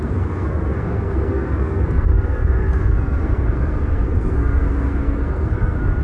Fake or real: fake